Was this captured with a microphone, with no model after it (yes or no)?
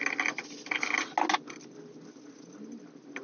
yes